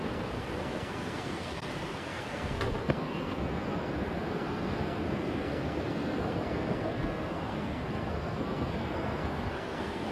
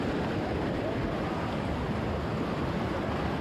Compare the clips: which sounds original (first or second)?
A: second